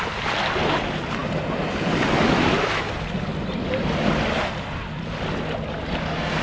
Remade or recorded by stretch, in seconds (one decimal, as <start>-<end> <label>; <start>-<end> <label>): 0.0-6.4 recorded